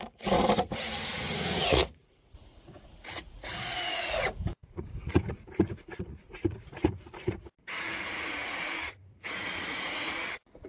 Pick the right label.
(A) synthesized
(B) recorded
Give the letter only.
A